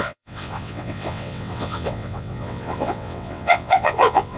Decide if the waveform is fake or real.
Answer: fake